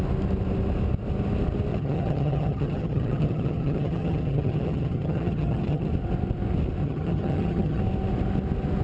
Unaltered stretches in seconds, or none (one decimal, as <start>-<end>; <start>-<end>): 0.0-1.7; 5.9-6.8; 7.8-8.8